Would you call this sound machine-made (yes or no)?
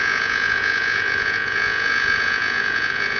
yes